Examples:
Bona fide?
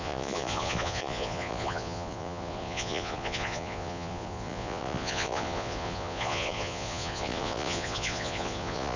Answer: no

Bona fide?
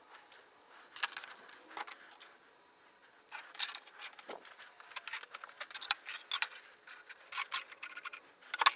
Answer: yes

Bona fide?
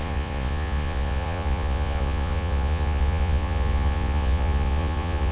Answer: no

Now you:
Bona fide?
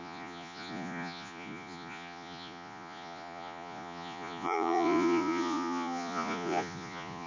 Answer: no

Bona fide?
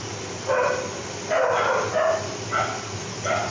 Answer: yes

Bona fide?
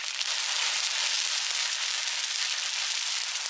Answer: yes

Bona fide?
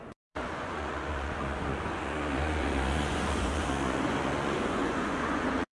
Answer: no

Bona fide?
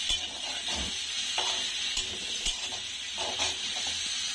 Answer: yes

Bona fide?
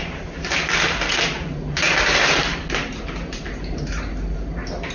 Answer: yes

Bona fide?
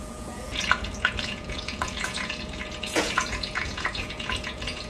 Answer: no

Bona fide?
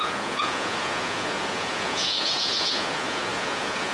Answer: no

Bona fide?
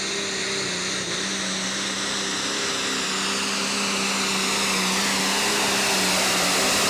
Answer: yes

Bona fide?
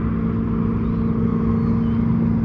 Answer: yes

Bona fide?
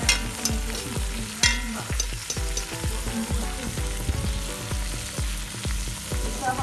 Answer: yes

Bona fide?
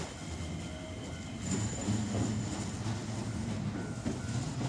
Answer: yes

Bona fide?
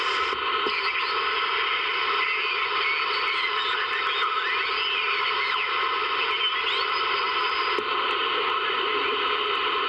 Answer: yes